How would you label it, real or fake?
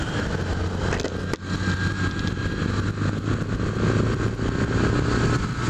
real